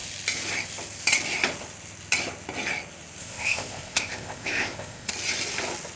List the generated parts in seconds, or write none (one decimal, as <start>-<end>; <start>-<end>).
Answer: 3.2-5.1